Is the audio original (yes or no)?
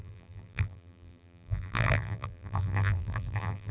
no